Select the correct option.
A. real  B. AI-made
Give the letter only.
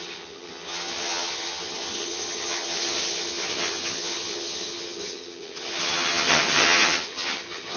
B